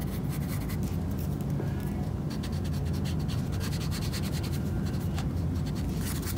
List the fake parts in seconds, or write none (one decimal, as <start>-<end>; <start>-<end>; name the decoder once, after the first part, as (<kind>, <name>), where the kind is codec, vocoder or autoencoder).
none

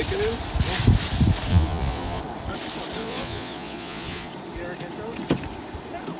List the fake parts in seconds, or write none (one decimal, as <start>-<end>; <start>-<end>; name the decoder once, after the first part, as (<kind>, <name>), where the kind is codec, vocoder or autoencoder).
1.5-2.2 (vocoder, Vocos); 3.0-4.3